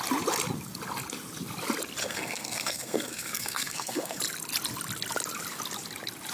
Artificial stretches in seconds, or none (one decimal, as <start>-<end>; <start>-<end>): 2.0-4.2